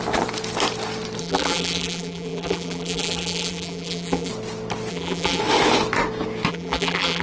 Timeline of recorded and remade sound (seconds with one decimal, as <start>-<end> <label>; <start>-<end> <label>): 0.0-1.2 recorded; 1.2-4.3 remade; 4.3-4.9 recorded; 4.9-5.4 remade; 5.4-6.5 recorded; 6.5-7.2 remade